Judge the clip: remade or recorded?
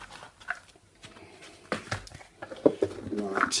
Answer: recorded